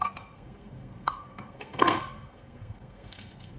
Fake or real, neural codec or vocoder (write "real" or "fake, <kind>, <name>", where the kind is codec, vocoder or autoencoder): fake, codec, SNAC